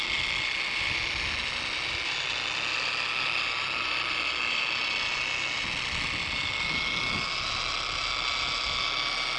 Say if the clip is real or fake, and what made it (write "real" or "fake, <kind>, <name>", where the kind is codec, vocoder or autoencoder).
real